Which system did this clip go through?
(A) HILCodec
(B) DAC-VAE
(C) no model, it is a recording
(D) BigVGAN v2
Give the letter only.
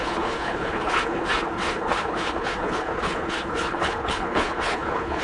A